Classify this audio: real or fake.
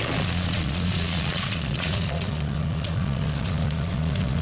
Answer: fake